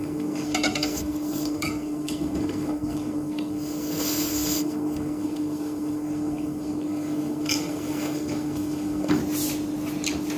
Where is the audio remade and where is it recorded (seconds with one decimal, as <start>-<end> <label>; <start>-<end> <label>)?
0.0-9.2 remade; 9.2-10.4 recorded